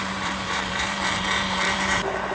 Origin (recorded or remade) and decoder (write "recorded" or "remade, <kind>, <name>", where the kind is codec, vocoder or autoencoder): remade, vocoder, BigVGAN v2